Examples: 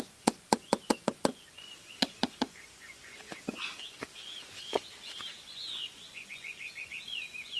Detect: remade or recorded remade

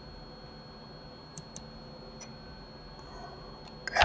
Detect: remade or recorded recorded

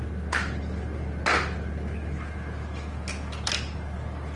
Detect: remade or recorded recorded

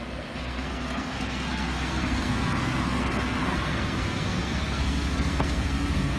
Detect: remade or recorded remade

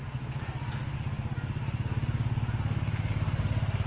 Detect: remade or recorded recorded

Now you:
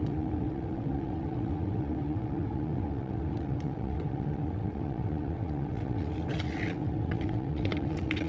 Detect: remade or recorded remade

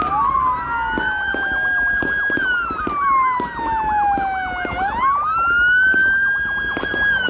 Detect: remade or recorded recorded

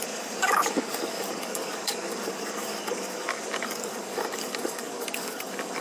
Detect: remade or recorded remade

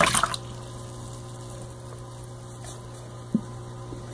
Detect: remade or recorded recorded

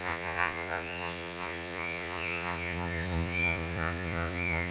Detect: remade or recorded remade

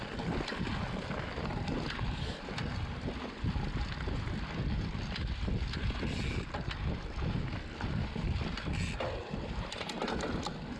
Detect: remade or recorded recorded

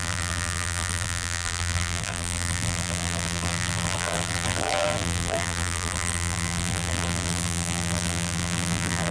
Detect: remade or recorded remade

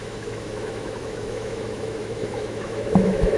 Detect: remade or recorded remade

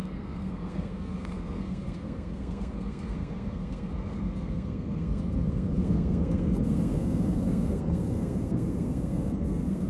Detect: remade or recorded remade